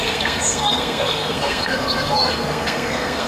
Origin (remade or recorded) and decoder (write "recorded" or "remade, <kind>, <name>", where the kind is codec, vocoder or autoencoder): remade, codec, SNAC